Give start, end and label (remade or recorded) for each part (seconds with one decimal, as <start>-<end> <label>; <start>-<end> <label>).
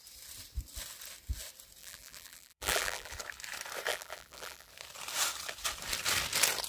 0.0-1.8 recorded; 1.8-3.1 remade; 3.1-3.9 recorded; 3.9-4.7 remade; 4.7-6.7 recorded